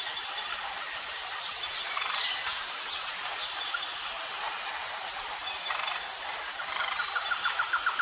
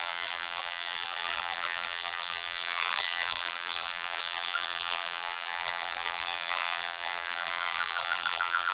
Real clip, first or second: first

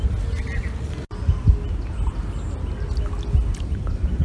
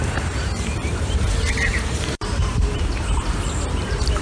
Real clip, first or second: first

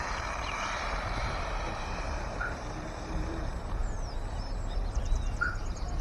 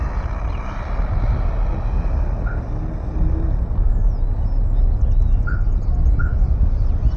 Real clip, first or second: second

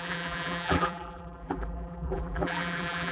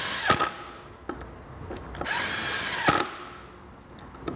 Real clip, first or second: second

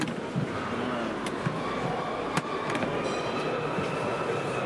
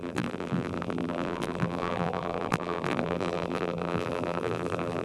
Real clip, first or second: first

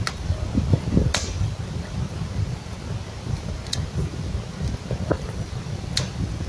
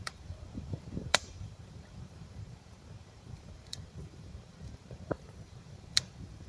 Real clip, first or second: first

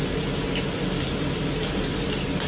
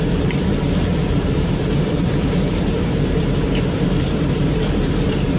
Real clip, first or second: first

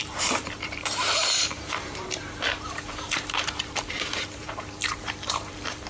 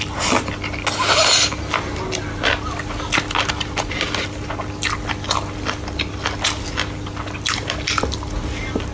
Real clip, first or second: second